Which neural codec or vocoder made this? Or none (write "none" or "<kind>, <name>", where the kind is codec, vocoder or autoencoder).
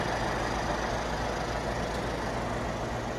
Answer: none